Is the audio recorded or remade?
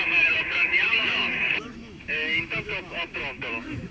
remade